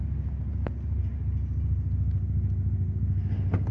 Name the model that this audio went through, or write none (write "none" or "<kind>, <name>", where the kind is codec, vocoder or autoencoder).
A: none